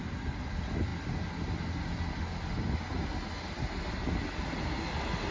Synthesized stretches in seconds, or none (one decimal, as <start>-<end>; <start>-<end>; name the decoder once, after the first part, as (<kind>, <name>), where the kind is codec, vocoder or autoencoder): none